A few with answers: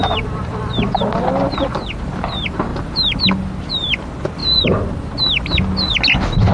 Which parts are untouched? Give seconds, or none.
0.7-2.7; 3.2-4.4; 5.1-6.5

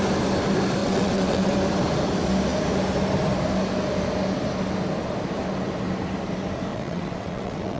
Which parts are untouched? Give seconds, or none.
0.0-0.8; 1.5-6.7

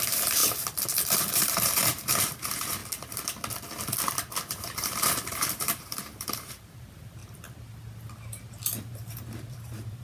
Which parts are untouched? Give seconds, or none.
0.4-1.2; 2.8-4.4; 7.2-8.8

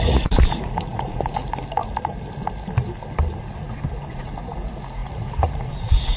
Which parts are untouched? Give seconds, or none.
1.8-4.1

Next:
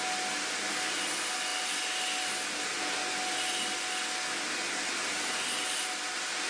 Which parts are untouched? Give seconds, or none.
0.0-6.5

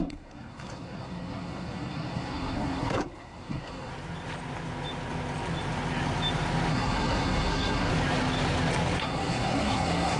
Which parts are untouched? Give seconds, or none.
3.9-6.7; 7.9-9.0

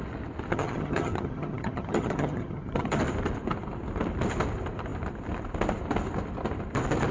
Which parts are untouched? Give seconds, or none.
0.0-0.5; 3.0-7.1